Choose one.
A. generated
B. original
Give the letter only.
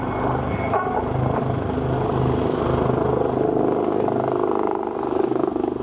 B